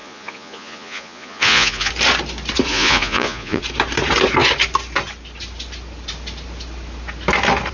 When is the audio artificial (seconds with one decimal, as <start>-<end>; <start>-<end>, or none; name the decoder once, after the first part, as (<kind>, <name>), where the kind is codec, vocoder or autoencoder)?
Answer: 0.0-1.9 (vocoder, Vocos); 2.7-3.6